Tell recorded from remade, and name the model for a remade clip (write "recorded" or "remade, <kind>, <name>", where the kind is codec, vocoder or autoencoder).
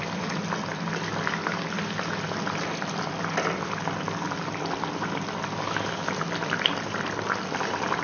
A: recorded